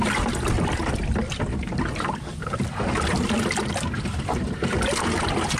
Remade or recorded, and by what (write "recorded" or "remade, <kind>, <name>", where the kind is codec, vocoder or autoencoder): recorded